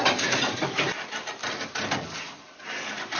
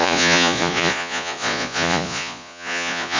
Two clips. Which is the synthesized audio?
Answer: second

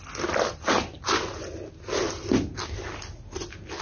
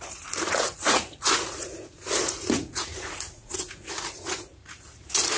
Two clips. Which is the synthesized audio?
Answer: second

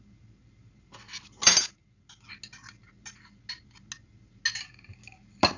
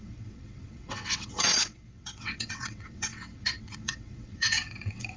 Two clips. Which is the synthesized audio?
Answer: second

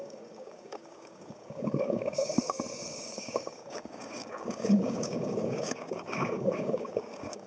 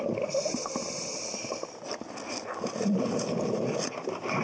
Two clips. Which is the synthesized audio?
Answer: first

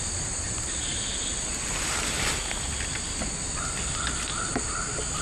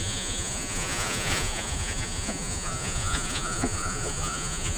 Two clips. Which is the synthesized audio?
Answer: second